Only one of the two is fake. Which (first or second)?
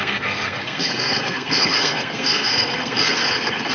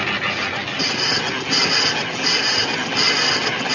first